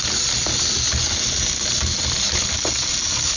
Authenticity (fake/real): real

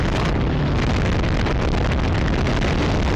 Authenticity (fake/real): real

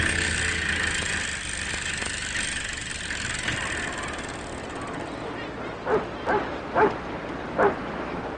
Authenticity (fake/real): real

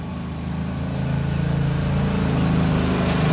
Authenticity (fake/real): real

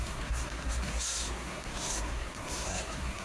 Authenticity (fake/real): fake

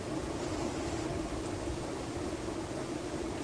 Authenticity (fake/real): real